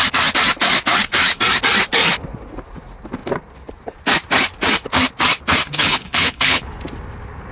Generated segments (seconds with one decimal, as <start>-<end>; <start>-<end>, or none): 5.8-6.8